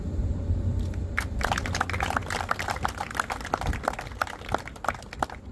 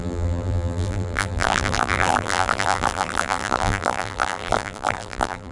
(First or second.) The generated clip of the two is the second